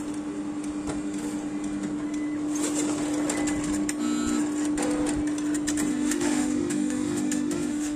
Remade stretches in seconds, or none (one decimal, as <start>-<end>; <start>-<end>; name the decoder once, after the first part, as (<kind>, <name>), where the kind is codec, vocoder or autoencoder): 5.9-8.0 (autoencoder, DAC-VAE)